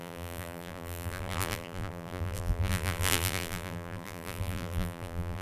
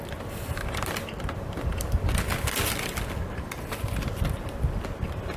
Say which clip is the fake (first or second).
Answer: first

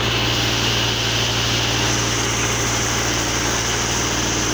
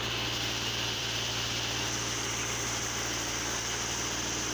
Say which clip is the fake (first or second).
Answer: second